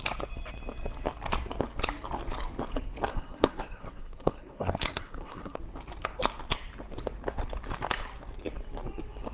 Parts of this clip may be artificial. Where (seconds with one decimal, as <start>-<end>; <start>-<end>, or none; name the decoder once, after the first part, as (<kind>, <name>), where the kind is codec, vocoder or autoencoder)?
3.1-5.6 (codec, SNAC)